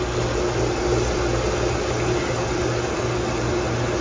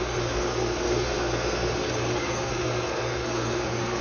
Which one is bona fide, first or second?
first